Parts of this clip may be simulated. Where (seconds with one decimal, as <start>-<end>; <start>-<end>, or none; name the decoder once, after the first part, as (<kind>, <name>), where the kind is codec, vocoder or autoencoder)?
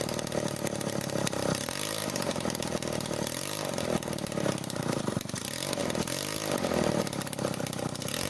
none